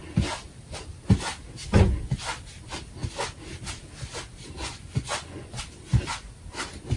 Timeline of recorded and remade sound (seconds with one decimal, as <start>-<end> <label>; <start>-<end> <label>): 0.0-4.6 recorded; 4.6-5.6 remade; 5.6-7.0 recorded